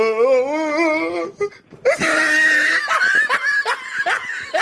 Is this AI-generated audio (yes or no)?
no